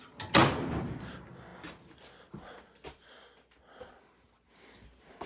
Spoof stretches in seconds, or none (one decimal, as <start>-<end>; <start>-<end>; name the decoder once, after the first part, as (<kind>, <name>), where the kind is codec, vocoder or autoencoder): none